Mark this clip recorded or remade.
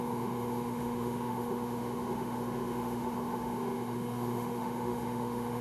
remade